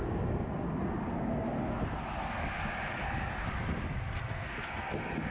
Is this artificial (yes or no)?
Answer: no